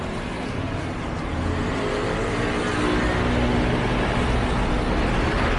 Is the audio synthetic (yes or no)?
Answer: no